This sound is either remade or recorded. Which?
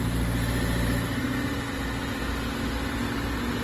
recorded